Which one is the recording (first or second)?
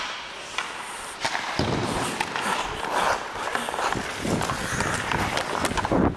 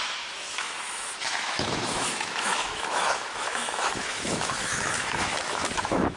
first